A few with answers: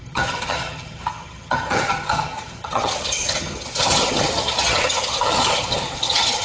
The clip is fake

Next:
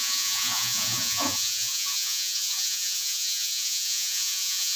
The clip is fake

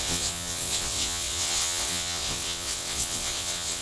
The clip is fake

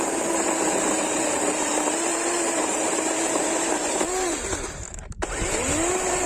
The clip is fake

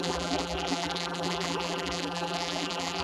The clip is fake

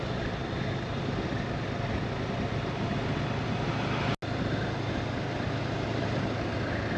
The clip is real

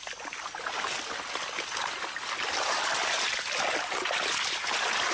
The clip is real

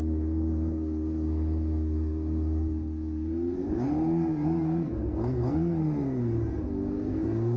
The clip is fake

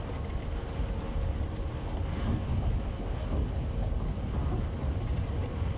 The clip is real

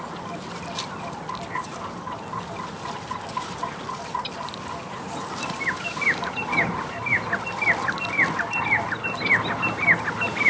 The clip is real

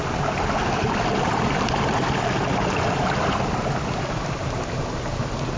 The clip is real